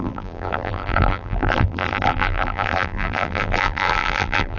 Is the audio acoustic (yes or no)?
no